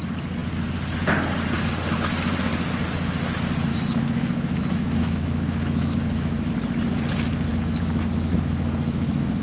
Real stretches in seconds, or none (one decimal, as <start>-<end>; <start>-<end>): 0.0-3.7; 6.5-7.5